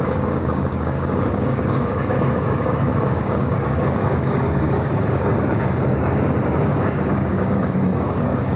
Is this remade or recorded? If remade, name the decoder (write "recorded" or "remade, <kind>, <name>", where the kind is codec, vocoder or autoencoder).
remade, codec, DAC